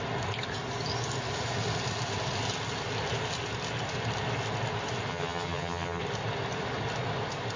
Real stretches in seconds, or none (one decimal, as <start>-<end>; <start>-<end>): 0.0-5.1; 6.0-7.6